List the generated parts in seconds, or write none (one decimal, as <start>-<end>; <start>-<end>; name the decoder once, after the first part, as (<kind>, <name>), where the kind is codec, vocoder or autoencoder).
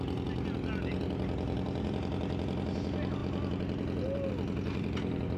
none